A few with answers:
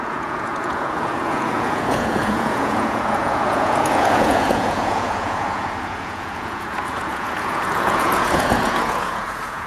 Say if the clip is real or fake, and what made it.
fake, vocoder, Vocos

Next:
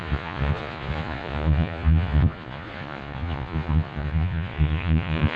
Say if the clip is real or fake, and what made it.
fake, vocoder, Vocos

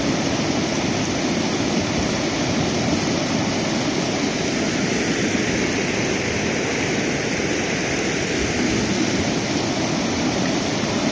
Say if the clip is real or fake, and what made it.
real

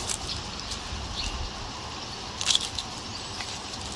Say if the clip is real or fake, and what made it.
real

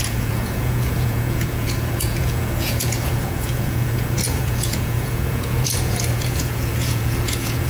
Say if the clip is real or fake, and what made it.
fake, vocoder, Vocos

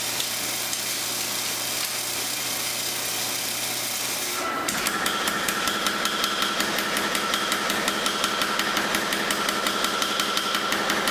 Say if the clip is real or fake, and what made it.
real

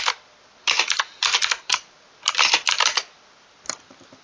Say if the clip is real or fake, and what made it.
real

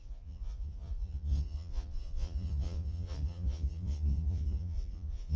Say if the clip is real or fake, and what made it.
fake, vocoder, Vocos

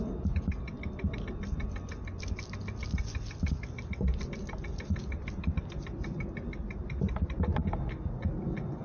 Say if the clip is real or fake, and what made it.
real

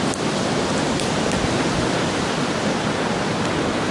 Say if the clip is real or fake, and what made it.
real